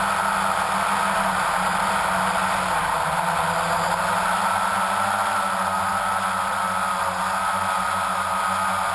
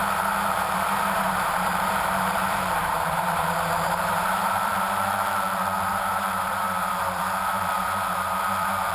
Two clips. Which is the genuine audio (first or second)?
first